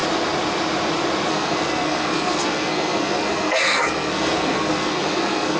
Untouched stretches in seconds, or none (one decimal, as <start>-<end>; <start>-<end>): 0.0-1.3